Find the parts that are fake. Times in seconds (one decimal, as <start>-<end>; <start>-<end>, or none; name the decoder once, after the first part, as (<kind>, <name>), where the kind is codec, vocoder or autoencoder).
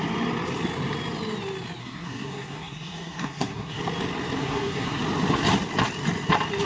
1.8-3.8 (codec, SNAC); 4.4-5.0